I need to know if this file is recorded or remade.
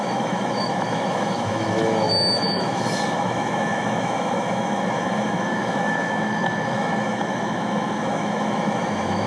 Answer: remade